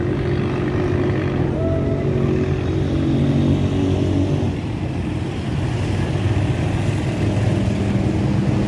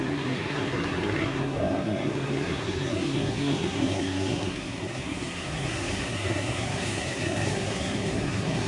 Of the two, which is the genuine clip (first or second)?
first